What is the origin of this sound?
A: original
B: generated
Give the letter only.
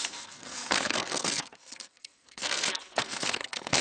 B